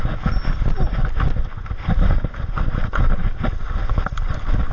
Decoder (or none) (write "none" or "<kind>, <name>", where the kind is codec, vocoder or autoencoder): none